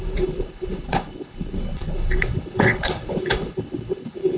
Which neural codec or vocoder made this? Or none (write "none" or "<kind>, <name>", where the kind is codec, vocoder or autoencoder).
codec, HILCodec